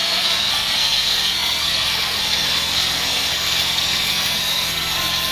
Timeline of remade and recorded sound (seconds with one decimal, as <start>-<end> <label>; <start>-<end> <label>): 0.0-5.3 remade